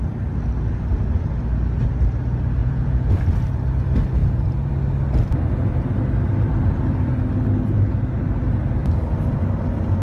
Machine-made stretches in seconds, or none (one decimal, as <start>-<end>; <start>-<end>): 2.6-3.2; 4.2-4.7